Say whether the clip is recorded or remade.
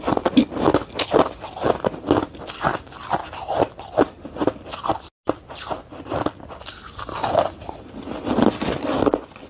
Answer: recorded